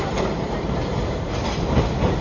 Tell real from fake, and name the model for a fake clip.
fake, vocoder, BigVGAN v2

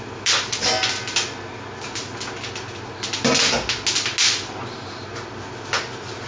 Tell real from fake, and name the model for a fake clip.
real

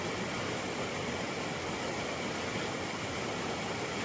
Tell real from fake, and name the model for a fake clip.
real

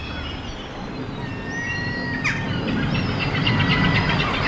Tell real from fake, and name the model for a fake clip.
real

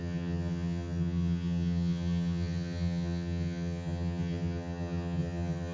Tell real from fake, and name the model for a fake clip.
fake, vocoder, HiFi-GAN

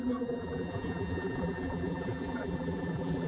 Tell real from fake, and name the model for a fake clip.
fake, vocoder, BigVGAN v2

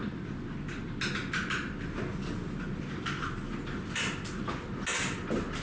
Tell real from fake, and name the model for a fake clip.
real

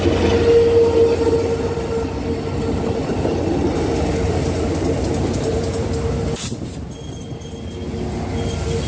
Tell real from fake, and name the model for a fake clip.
real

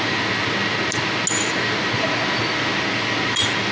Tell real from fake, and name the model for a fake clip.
real